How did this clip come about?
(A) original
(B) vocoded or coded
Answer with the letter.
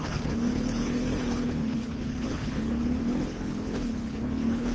B